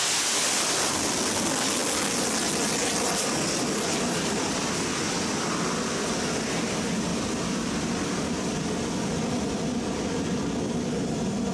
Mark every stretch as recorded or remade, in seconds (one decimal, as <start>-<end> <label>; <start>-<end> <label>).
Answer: 0.0-11.5 recorded